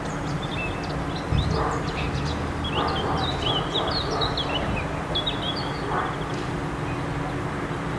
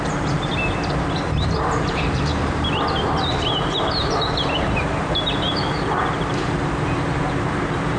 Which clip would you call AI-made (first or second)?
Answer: second